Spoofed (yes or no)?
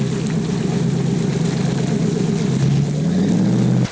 no